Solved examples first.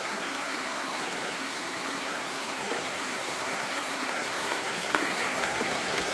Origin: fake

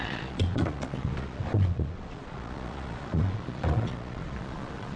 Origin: fake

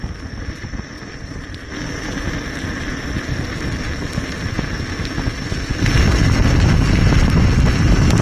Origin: real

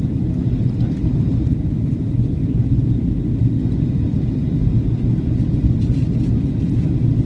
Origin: real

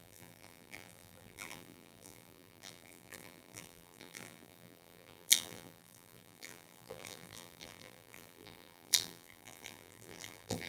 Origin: fake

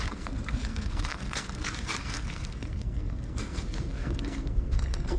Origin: fake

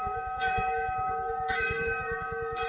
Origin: fake